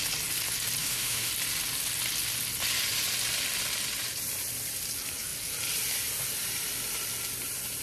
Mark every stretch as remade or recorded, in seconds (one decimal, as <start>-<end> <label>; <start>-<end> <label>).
0.0-0.8 recorded; 0.8-1.3 remade; 1.3-7.8 recorded